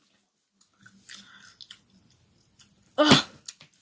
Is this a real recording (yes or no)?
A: yes